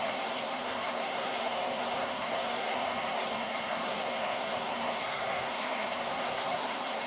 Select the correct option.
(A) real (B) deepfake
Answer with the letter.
B